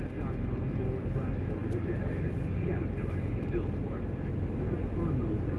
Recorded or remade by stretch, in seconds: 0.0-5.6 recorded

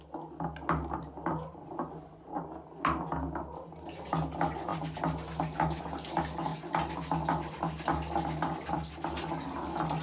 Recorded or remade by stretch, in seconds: 0.0-10.0 recorded

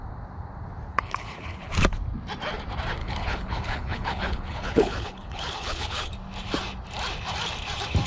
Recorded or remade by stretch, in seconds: 0.0-0.9 recorded; 0.9-1.7 remade; 1.7-3.0 recorded; 3.0-6.1 remade; 6.1-8.1 recorded

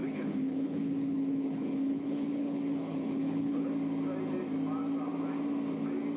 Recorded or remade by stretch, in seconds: 0.0-3.7 remade; 3.7-6.2 recorded

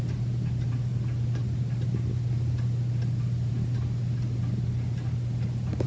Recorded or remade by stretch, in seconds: 0.0-5.9 recorded